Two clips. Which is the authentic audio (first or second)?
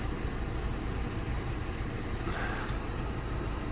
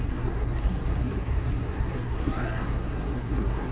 first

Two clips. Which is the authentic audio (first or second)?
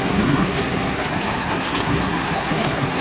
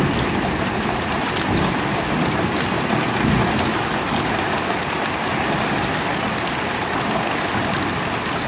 second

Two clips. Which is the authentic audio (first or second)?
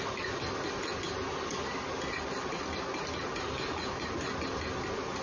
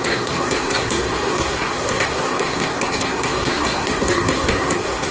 first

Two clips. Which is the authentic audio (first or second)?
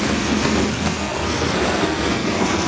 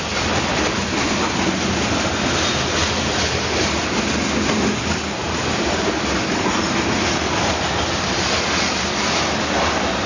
second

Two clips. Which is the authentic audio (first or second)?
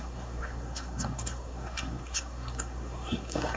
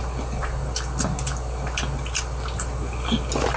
second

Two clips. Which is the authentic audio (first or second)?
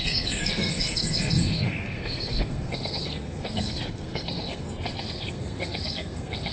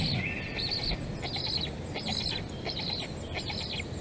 second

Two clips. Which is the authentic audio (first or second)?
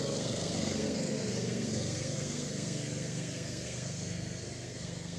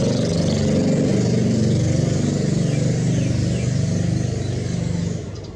second